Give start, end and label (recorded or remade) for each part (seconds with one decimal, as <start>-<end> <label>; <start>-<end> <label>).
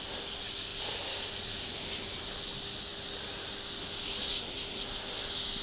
0.0-5.6 recorded